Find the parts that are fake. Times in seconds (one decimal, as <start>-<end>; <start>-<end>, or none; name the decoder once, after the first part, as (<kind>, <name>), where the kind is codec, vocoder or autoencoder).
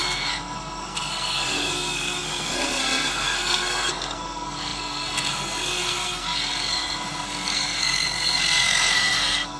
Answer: 0.0-9.6 (codec, SNAC)